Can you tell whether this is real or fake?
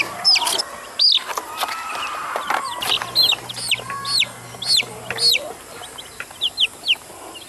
real